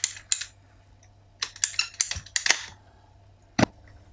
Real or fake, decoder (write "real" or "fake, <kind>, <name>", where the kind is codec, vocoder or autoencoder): real